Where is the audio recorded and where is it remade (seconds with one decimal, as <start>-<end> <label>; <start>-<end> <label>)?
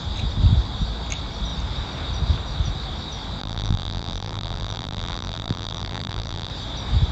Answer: 0.0-3.4 recorded; 3.4-6.5 remade; 6.5-7.1 recorded